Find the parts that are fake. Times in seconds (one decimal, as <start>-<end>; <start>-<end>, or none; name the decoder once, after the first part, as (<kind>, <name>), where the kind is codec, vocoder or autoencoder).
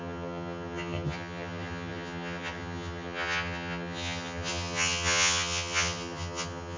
0.0-6.8 (vocoder, HiFi-GAN)